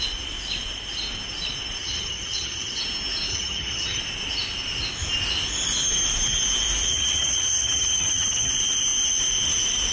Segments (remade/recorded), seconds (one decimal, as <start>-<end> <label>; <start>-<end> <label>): 0.0-1.8 recorded; 1.8-2.8 remade; 2.8-3.3 recorded; 3.3-4.0 remade; 4.0-6.9 recorded; 6.9-8.5 remade; 8.5-9.9 recorded

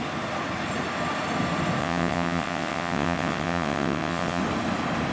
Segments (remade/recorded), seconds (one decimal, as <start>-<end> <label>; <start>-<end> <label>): 0.0-1.8 recorded; 1.8-4.4 remade; 4.4-5.1 recorded

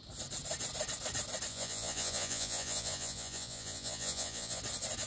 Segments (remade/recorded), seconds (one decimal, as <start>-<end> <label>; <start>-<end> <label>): 0.0-1.5 recorded; 1.5-4.6 remade; 4.6-5.1 recorded

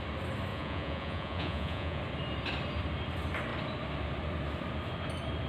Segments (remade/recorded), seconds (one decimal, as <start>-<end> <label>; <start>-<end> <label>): 0.0-0.5 recorded; 0.5-2.0 remade; 2.0-5.5 recorded

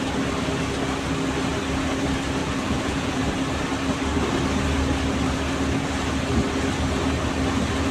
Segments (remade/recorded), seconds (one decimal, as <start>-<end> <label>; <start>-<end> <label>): 0.0-2.4 recorded; 2.4-3.2 remade; 3.2-7.9 recorded

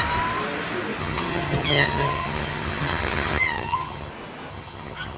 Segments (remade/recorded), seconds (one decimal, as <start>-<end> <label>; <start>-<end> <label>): 0.0-1.0 recorded; 1.0-4.1 remade; 4.1-4.5 recorded; 4.5-5.2 remade

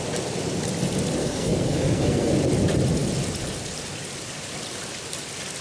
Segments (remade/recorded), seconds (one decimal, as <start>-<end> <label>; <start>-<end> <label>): 0.0-1.2 recorded; 1.2-2.3 remade; 2.3-5.6 recorded